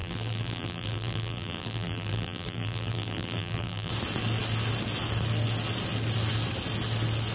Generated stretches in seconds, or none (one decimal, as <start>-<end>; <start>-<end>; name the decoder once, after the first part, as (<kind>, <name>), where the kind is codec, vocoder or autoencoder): 0.0-3.9 (vocoder, BigVGAN v2)